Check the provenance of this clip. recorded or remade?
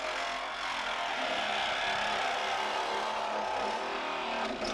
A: recorded